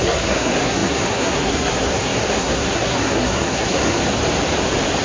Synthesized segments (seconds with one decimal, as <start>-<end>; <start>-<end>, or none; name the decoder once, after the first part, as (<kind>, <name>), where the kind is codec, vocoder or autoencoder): 0.0-4.0 (codec, SNAC)